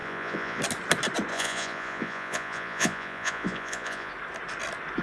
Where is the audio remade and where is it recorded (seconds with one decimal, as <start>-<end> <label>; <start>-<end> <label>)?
0.0-0.6 remade; 0.6-1.3 recorded; 1.3-4.1 remade; 4.1-5.0 recorded